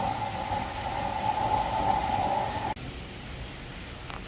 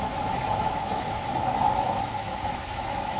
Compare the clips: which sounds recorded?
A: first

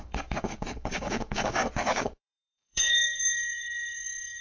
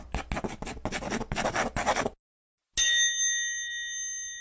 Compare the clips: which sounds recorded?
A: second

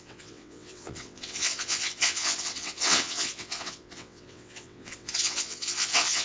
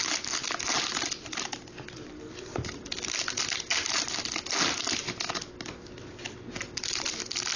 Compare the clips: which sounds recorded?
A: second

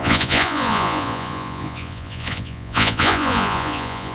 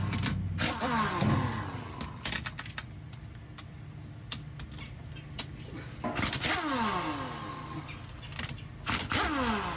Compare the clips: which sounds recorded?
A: second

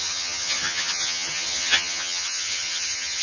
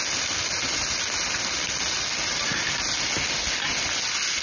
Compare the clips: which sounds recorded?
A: second